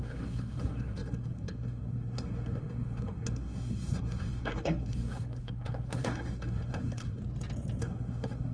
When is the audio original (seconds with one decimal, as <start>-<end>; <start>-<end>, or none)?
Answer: 7.2-7.8